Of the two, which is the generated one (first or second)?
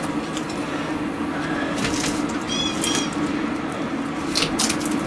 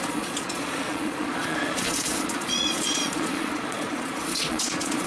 second